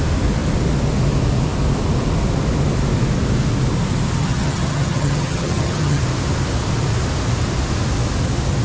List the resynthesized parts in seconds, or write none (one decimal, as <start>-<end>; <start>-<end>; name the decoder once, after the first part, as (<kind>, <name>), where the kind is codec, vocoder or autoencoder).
4.2-6.0 (vocoder, HiFi-GAN)